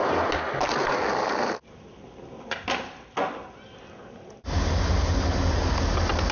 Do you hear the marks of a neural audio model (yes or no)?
no